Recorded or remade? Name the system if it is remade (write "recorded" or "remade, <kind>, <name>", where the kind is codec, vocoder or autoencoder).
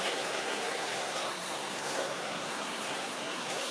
remade, codec, SNAC